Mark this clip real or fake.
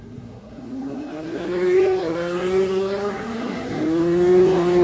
fake